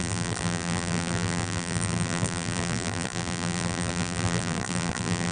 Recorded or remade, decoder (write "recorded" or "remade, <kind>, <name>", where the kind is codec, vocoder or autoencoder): remade, vocoder, BigVGAN v2